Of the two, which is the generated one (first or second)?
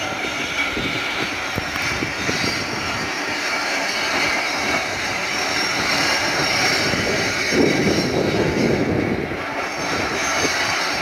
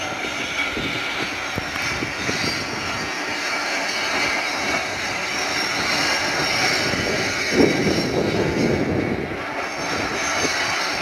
first